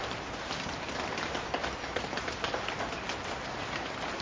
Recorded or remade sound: remade